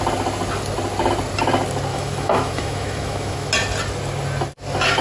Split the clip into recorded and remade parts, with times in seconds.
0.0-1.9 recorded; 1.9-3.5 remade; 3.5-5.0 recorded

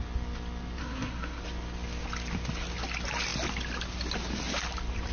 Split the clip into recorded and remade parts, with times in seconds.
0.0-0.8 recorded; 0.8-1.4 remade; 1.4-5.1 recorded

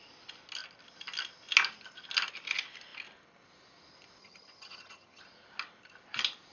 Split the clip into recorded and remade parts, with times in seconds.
0.0-4.2 recorded; 4.2-5.2 remade; 5.2-6.5 recorded

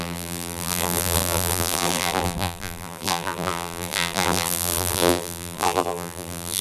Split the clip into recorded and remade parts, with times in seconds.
0.0-6.6 remade

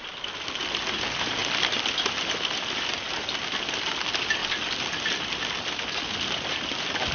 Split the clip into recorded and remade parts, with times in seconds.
0.0-7.1 recorded